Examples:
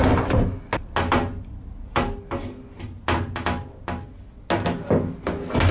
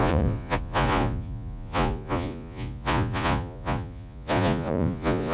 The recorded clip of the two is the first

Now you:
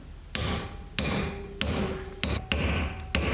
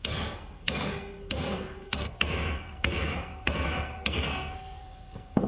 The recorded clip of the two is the first